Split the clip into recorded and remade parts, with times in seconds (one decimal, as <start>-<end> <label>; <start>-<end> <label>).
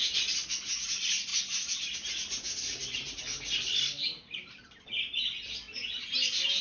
0.0-6.6 recorded